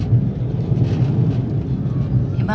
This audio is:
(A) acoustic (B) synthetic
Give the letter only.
A